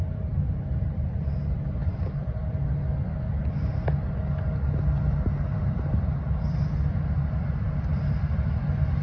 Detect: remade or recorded recorded